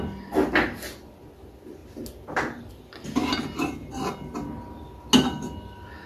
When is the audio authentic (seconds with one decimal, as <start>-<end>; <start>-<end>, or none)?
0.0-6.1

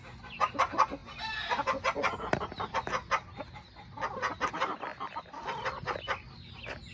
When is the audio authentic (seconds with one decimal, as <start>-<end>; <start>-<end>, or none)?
0.0-6.9

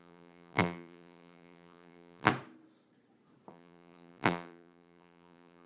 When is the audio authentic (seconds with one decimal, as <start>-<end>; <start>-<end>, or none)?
2.3-3.5

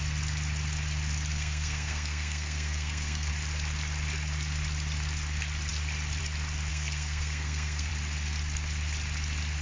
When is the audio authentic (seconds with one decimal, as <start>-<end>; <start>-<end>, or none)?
0.0-1.3; 3.3-6.7; 7.9-9.6

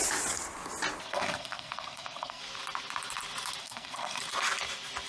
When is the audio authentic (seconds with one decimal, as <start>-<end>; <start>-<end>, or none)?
0.0-1.0; 2.4-3.6; 4.2-5.1